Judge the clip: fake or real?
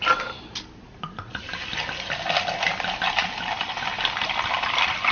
real